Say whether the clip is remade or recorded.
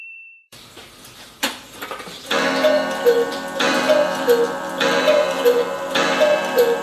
remade